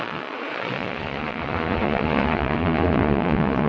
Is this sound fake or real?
fake